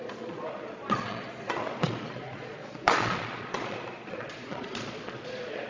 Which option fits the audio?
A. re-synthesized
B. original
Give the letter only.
A